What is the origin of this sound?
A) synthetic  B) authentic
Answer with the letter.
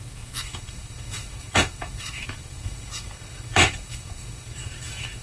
A